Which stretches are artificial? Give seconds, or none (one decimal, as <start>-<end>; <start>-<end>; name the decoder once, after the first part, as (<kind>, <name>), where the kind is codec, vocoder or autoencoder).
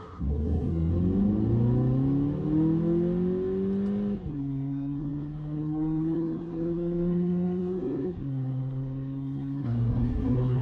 0.0-0.9 (codec, SNAC); 4.3-10.6